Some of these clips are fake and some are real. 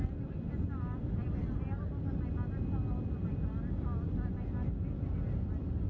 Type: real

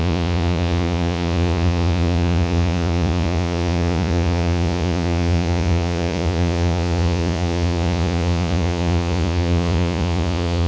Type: fake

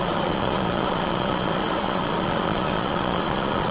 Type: fake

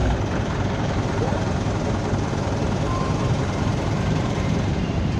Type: fake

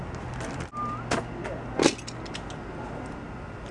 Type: real